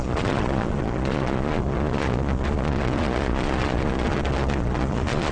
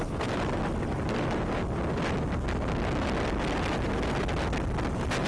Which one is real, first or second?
second